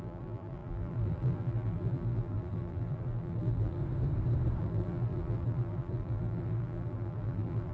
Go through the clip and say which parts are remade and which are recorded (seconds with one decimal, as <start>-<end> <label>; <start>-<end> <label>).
0.0-3.8 remade; 3.8-4.6 recorded; 4.6-7.7 remade